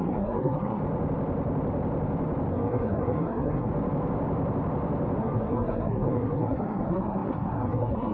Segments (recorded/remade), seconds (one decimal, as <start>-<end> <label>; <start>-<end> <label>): 0.0-0.8 remade; 0.8-2.5 recorded; 2.5-3.7 remade; 3.7-5.2 recorded; 5.2-8.1 remade